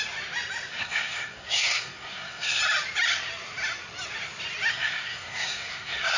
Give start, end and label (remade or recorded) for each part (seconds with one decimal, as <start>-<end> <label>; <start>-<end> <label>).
0.0-0.7 recorded; 0.7-2.6 remade; 2.6-4.7 recorded; 4.7-6.2 remade